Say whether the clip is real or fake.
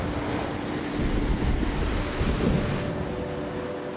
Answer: real